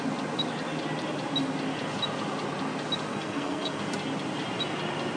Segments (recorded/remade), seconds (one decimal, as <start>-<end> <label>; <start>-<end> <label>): 0.0-3.1 recorded; 3.1-3.8 remade; 3.8-5.2 recorded